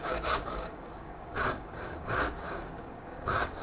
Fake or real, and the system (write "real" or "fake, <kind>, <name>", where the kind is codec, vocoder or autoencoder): fake, codec, DAC